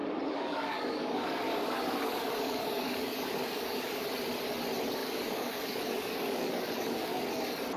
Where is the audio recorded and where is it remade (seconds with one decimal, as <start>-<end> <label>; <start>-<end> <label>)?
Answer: 0.0-4.0 remade; 4.0-5.0 recorded; 5.0-7.2 remade; 7.2-7.8 recorded